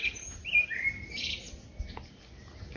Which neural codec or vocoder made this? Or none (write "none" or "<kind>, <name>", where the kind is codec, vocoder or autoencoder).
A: none